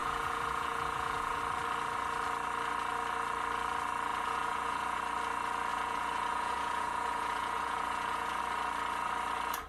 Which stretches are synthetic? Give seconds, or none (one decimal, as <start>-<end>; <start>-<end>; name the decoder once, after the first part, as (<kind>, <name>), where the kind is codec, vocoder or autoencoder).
0.0-1.4 (vocoder, Vocos); 4.1-5.0; 5.7-8.4